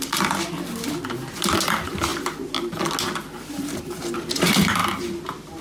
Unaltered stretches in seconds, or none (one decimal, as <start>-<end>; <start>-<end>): 2.1-3.4; 4.8-5.6